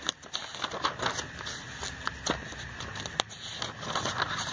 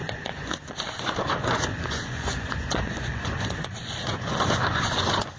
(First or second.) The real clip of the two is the first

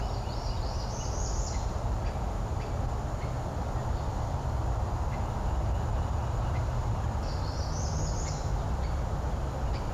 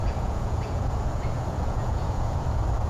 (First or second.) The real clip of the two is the first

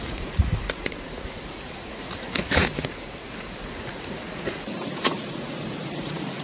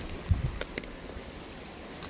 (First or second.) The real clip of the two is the second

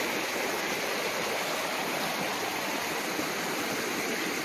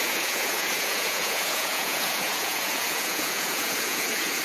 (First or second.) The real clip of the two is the first